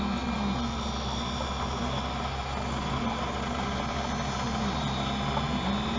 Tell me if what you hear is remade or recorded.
recorded